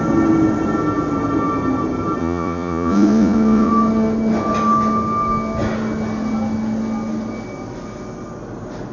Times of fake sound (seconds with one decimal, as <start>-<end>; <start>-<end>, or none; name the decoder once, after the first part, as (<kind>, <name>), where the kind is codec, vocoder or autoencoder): 2.2-3.7 (vocoder, Vocos)